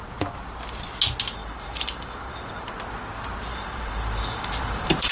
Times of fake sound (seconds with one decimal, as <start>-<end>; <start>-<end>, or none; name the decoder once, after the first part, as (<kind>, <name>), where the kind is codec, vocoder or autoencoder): 1.4-2.7 (vocoder, BigVGAN v2); 3.5-5.1